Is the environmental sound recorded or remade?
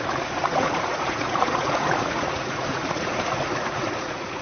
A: remade